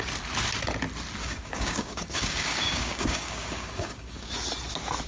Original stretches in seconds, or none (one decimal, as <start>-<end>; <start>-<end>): 0.0-1.2; 4.3-5.1